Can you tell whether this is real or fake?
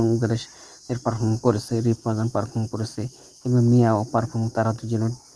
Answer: real